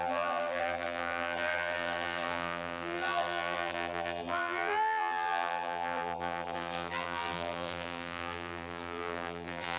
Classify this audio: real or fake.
fake